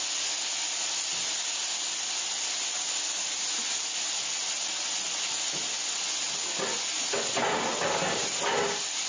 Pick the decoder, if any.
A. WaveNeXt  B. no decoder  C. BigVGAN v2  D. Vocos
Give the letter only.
B